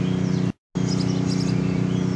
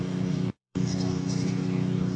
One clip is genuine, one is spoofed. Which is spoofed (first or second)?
second